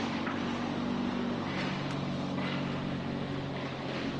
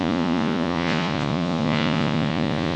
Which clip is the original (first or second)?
first